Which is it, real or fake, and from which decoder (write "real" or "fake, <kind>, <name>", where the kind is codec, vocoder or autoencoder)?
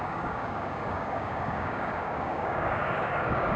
fake, codec, DAC